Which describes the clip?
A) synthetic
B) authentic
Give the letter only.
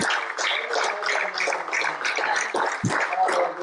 B